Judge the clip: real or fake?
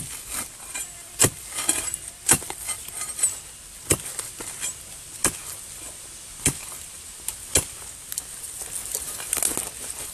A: real